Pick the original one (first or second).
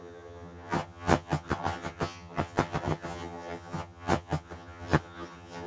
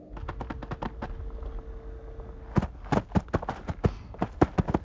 second